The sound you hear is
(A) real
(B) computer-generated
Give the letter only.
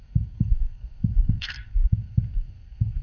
B